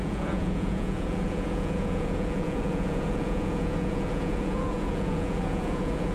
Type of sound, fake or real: fake